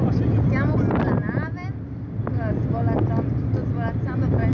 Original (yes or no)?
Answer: yes